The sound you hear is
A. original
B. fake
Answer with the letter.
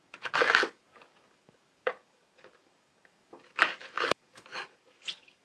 B